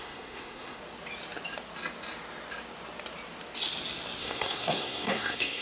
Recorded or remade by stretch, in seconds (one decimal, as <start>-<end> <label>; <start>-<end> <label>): 0.0-0.8 remade; 0.8-4.2 recorded; 4.2-5.6 remade